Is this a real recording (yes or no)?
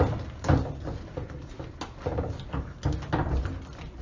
yes